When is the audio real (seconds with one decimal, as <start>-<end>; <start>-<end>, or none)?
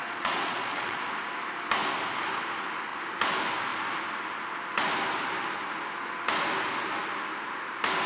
1.0-8.1